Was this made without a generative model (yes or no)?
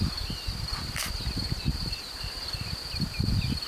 yes